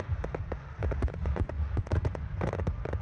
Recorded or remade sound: remade